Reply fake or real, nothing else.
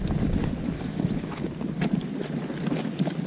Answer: real